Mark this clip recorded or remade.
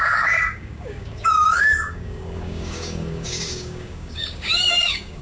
remade